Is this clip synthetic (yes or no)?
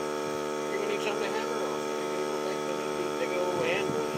yes